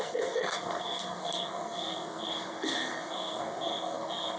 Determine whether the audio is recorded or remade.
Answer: remade